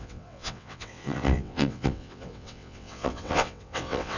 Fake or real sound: fake